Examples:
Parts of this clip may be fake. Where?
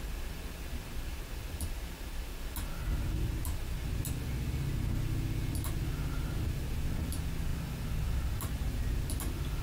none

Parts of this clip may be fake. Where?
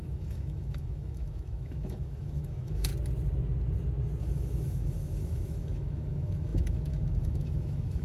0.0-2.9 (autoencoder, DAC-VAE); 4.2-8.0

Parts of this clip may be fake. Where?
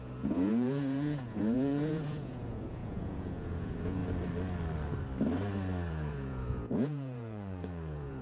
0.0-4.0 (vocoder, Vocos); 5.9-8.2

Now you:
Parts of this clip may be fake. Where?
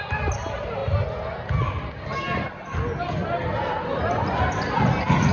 none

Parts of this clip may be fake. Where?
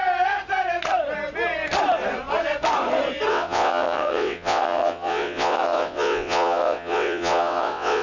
3.3-8.0 (vocoder, WaveNeXt)